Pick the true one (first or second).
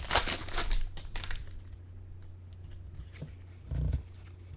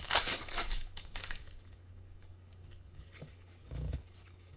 first